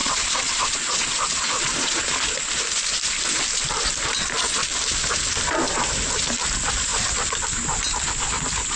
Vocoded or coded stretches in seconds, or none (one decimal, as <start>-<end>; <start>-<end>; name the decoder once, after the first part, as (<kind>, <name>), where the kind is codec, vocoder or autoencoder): 0.0-2.0 (vocoder, Vocos)